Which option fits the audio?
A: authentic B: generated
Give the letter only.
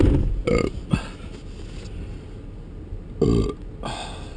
A